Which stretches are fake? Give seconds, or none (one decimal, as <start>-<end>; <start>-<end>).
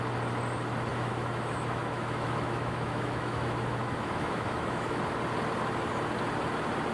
0.9-5.0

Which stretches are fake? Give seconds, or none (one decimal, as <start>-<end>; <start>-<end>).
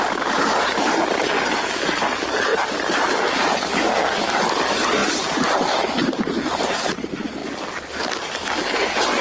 none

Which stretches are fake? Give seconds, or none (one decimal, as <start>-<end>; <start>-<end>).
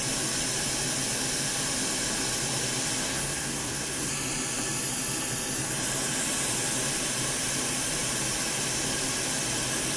3.1-4.1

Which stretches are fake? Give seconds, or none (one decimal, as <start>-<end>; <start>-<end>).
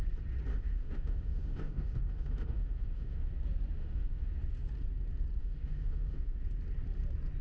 0.5-3.3; 3.8-4.3; 5.4-6.4